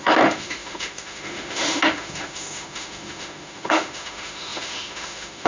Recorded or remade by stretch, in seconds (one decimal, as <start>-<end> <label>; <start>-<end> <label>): 0.0-5.5 remade